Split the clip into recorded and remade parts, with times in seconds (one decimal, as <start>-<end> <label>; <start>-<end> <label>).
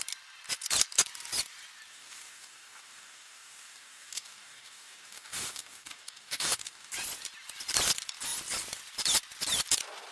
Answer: 0.0-1.9 recorded; 1.9-6.9 remade; 6.9-10.1 recorded